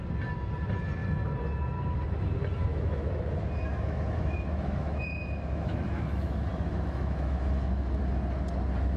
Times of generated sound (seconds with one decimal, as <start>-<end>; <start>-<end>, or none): 2.7-3.3; 3.7-8.0